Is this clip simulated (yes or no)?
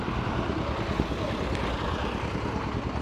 no